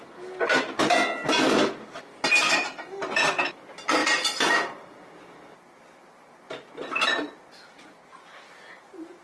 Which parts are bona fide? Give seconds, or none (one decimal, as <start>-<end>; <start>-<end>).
0.0-9.2